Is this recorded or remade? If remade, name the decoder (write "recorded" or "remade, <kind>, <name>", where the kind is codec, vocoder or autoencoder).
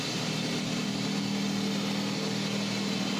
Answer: recorded